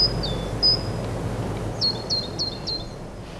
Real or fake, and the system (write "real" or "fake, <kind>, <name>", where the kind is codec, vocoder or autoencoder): real